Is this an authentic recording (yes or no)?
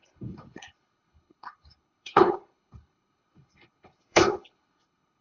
no